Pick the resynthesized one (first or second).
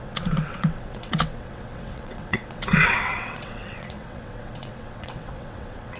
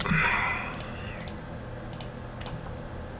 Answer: first